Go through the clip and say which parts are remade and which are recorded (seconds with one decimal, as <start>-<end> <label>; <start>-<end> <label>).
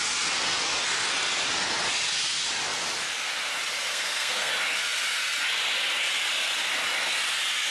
0.0-3.9 recorded; 3.9-4.5 remade; 4.5-7.7 recorded